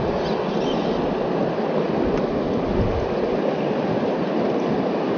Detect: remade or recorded recorded